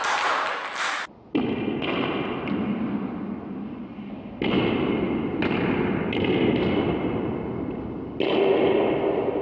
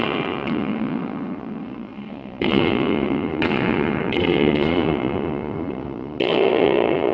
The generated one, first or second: second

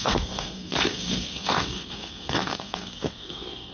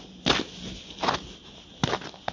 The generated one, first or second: first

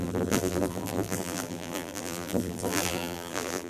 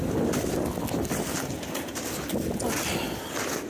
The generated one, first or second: first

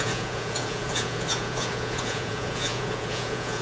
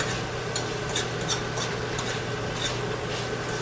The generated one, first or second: first